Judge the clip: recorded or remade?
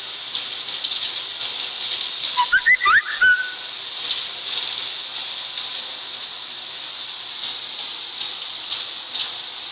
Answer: recorded